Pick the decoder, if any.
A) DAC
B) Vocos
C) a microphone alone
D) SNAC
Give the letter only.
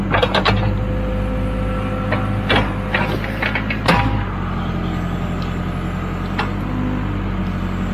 C